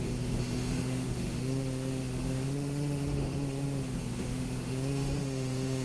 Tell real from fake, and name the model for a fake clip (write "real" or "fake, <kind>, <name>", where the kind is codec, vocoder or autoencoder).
fake, autoencoder, DAC-VAE